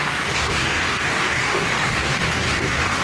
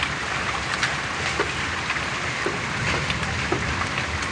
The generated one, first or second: first